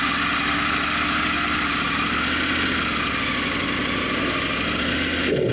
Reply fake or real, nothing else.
real